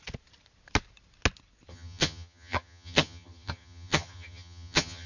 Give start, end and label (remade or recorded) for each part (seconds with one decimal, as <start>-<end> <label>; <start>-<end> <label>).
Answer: 0.0-1.7 recorded; 1.7-5.1 remade